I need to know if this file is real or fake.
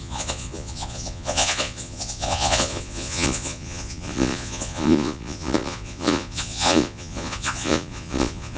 fake